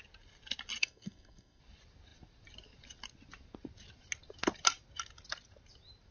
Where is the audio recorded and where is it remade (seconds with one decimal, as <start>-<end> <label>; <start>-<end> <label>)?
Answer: 0.0-0.8 recorded; 0.8-1.6 remade; 1.6-6.1 recorded